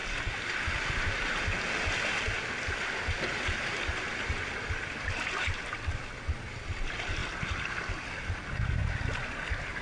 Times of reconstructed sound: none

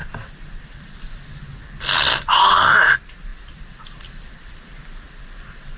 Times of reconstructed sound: 0.0-1.8 (vocoder, BigVGAN v2); 3.3-4.8

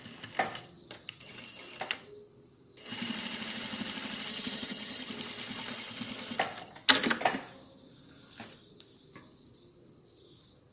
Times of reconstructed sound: 4.3-5.1 (vocoder, HiFi-GAN)

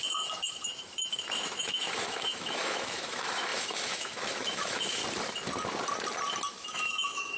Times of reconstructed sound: 0.0-5.0 (autoencoder, DAC-VAE); 6.5-7.4